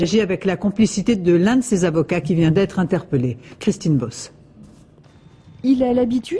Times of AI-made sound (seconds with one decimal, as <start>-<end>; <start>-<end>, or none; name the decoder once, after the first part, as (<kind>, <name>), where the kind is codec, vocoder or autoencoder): none